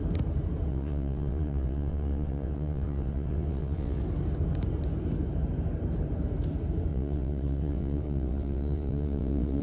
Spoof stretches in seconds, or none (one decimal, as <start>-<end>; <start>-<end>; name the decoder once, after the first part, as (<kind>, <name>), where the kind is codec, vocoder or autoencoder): 0.7-4.0 (vocoder, WaveNeXt); 6.9-9.6